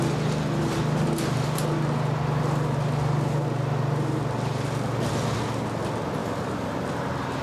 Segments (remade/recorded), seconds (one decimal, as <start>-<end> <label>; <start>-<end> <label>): 0.0-6.2 recorded; 6.2-7.0 remade; 7.0-7.4 recorded